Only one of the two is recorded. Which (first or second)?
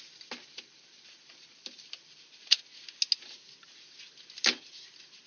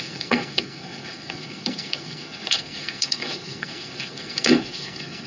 first